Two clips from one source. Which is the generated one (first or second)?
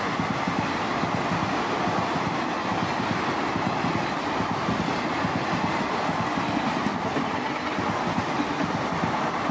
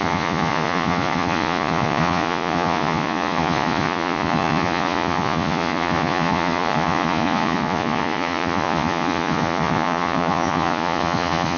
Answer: second